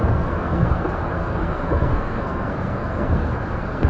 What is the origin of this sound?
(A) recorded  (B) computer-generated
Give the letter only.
B